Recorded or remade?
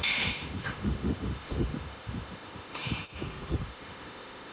remade